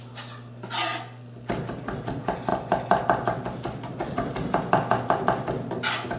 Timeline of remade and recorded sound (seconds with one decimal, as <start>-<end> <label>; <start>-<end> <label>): 0.0-6.2 recorded